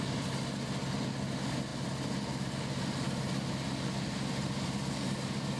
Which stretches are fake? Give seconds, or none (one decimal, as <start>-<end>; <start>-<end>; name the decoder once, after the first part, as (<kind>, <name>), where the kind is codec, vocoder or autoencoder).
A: none